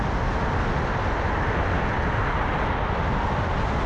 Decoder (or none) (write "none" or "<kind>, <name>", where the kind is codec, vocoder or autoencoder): none